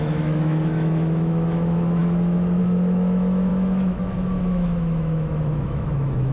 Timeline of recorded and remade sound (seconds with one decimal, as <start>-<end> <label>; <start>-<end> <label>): 0.0-6.3 remade